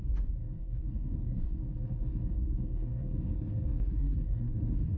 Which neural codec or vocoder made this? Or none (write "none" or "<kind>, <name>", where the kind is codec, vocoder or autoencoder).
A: codec, SNAC